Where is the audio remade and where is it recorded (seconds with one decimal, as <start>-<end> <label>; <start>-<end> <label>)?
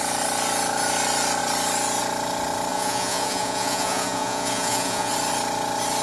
0.0-2.7 recorded; 2.7-5.1 remade; 5.1-6.0 recorded